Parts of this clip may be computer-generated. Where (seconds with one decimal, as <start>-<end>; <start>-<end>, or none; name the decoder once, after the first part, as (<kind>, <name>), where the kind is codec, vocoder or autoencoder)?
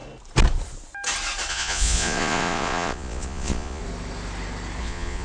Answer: 1.5-3.8 (vocoder, Vocos); 4.8-5.2